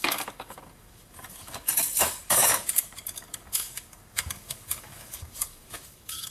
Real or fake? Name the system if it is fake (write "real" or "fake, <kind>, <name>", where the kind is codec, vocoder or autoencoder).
fake, codec, DAC